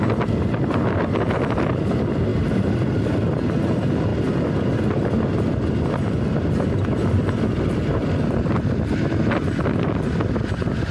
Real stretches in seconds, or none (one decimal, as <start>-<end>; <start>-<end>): 4.1-6.3